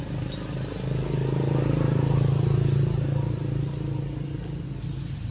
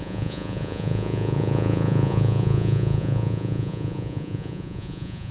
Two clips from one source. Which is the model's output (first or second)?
second